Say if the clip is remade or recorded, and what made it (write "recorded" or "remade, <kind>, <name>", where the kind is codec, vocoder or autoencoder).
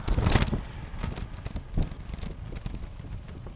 recorded